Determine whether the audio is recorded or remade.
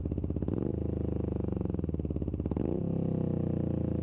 recorded